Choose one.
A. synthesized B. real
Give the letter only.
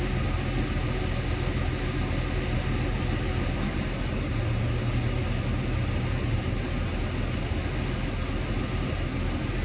B